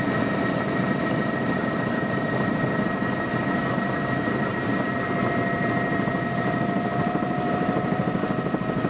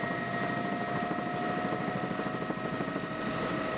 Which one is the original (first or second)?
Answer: second